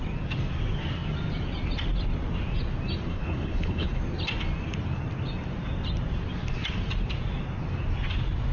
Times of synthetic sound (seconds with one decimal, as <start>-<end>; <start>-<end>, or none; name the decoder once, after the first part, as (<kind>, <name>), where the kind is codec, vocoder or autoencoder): 3.1-4.0 (codec, HILCodec)

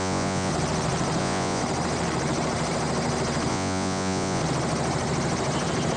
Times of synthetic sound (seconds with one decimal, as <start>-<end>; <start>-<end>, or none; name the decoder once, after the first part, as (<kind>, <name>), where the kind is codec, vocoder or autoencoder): 0.0-0.5 (vocoder, Vocos); 1.2-1.6; 3.5-4.4

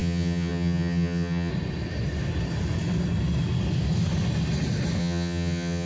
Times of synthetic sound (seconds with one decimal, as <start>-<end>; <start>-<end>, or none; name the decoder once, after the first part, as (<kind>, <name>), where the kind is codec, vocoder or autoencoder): 0.0-1.5 (vocoder, HiFi-GAN); 5.0-5.9

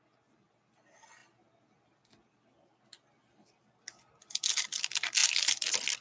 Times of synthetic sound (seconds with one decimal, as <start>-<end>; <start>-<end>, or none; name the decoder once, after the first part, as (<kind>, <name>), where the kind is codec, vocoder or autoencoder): none